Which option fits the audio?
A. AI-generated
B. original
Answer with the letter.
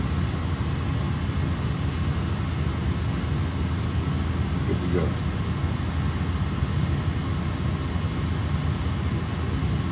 B